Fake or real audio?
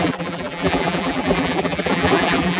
fake